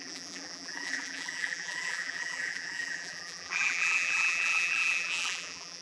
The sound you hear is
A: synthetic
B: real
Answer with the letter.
A